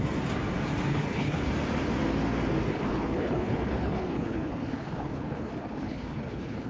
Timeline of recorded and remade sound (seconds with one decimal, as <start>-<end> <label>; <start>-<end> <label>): 0.0-0.9 recorded; 0.9-1.5 remade; 1.5-2.7 recorded; 2.7-6.7 remade